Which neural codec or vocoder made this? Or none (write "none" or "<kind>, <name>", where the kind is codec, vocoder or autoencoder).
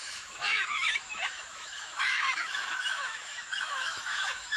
autoencoder, DAC-VAE